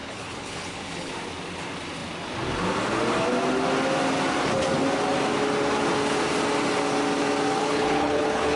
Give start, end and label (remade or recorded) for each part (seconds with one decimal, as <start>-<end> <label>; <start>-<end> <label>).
0.0-1.1 remade; 1.1-7.6 recorded; 7.6-8.6 remade